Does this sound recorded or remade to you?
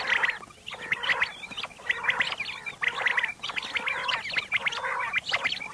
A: recorded